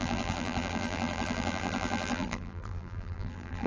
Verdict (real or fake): fake